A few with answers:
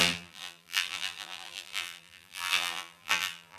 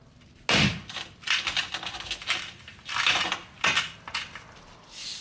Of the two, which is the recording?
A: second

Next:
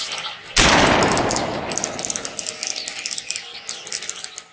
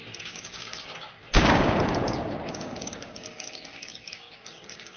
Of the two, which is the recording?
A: first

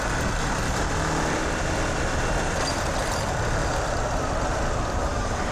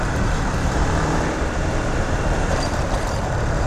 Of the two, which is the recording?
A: first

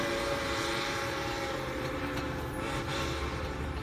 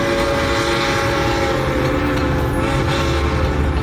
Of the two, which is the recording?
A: second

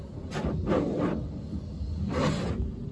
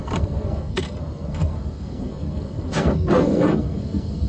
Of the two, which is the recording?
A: first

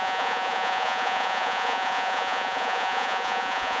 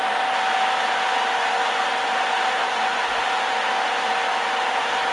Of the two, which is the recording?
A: second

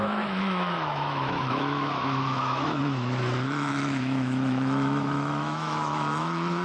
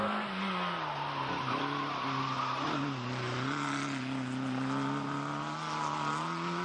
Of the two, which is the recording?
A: second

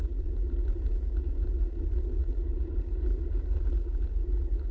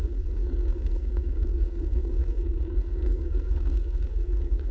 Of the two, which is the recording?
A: first